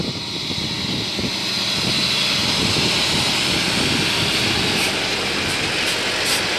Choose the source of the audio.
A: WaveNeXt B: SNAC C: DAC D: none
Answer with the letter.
D